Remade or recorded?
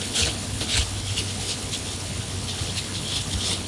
remade